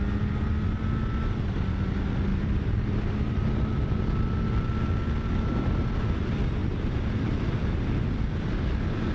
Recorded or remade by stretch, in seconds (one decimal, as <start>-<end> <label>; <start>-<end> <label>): 0.0-2.3 recorded; 2.3-3.4 remade; 3.4-6.6 recorded; 6.6-7.1 remade; 7.1-9.1 recorded